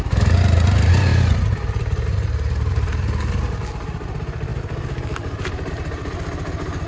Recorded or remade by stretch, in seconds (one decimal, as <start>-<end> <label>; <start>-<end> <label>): 0.0-6.9 recorded